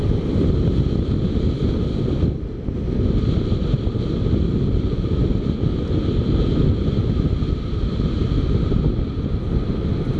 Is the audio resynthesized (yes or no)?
no